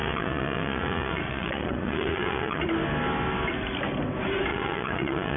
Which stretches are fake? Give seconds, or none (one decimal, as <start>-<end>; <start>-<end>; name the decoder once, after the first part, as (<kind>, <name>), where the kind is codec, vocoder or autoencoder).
0.0-2.6 (vocoder, Vocos); 4.5-5.4